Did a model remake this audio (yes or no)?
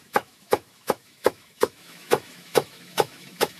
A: yes